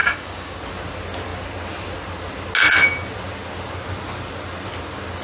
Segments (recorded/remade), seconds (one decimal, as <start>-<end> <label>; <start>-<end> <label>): 0.0-0.6 remade; 0.6-5.2 recorded